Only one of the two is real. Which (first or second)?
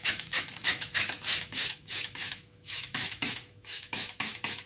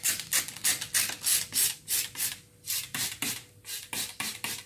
second